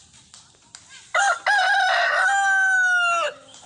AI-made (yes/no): no